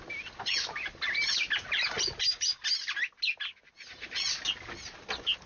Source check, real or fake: real